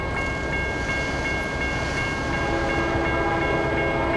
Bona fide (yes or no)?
yes